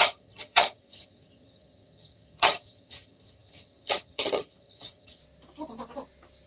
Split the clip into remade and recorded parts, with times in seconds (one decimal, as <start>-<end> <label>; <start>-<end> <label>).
0.0-5.2 remade; 5.2-6.5 recorded